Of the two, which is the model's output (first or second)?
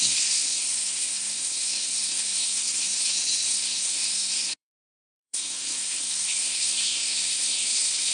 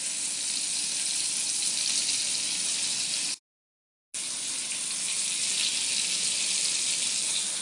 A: first